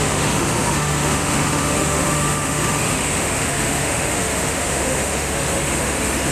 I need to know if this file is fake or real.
fake